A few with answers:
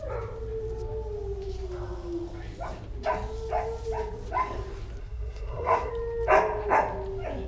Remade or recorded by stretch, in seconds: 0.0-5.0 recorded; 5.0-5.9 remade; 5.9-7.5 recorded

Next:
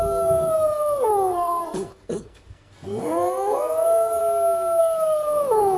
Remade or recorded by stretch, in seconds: 0.0-4.2 remade; 4.2-4.8 recorded; 4.8-5.8 remade

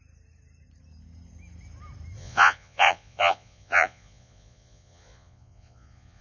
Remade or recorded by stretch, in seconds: 0.0-2.2 recorded; 2.2-6.2 remade

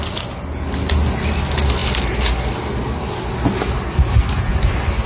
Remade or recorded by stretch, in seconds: 0.0-5.1 recorded